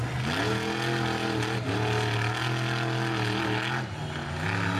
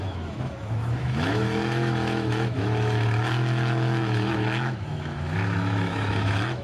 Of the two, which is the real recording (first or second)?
first